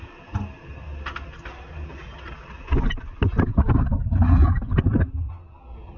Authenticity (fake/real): real